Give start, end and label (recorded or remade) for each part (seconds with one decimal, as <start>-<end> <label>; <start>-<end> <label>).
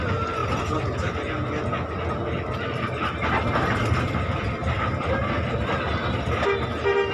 0.0-7.1 recorded